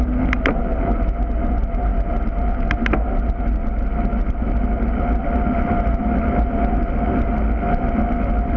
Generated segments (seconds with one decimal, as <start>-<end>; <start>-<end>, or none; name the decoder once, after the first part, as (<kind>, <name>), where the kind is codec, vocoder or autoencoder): none